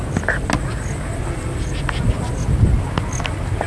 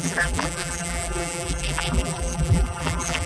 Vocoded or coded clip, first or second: second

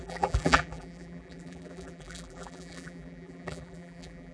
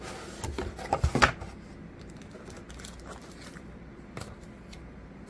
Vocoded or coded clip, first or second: first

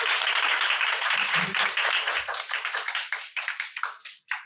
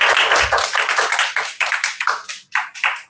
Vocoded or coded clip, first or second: first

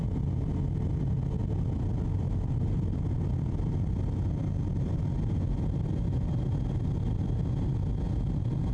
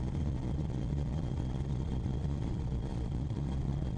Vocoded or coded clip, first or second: second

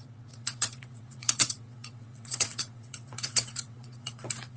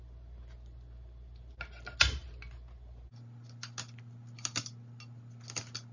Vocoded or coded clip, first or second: first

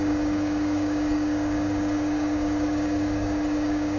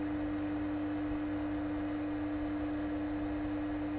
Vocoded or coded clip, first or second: first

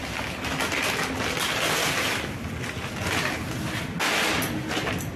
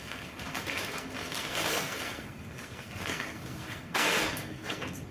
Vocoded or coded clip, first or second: second